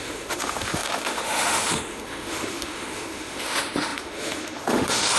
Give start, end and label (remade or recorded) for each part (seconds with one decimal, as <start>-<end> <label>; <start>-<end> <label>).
0.0-5.2 remade